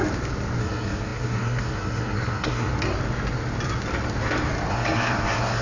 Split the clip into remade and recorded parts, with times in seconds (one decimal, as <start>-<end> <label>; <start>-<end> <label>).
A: 0.0-0.6 recorded; 0.6-2.7 remade; 2.7-4.7 recorded; 4.7-5.6 remade